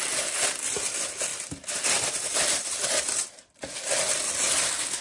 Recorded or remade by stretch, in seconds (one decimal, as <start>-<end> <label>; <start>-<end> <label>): 0.0-5.0 recorded